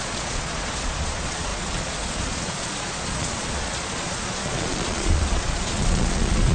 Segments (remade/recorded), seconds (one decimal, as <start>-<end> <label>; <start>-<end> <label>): 0.0-6.5 remade